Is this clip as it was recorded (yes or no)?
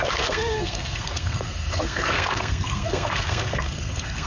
no